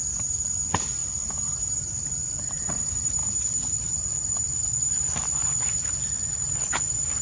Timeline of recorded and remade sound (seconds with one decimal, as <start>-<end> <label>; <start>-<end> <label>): 0.0-3.2 remade; 3.2-7.2 recorded